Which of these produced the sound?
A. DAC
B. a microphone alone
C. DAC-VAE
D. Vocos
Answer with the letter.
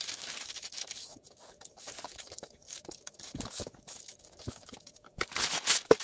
A